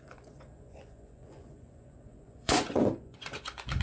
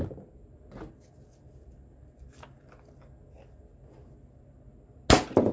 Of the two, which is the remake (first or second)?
first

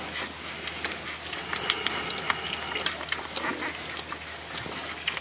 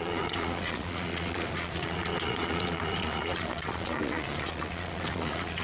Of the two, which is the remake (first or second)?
second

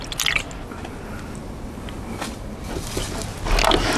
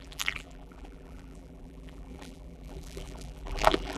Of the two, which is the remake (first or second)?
second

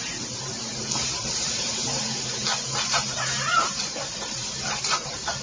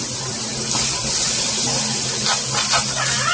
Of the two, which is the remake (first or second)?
first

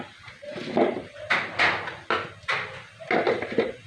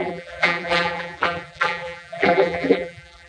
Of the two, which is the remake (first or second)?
second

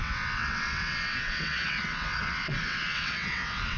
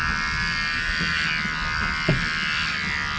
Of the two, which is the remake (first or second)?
first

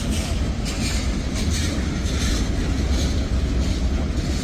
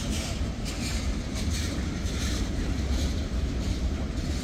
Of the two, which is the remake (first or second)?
second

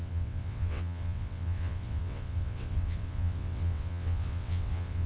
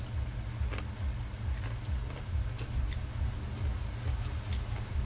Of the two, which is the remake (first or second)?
first